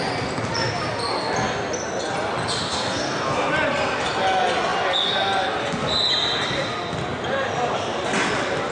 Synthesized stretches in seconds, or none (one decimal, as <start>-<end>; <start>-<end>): 2.7-3.5